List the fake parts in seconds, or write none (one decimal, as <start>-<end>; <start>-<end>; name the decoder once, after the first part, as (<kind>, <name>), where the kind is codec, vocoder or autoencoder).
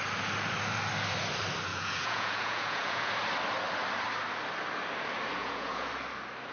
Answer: 1.7-3.1 (vocoder, Vocos); 5.4-5.9